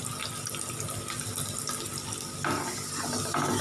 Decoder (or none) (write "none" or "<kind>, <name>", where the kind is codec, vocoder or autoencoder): none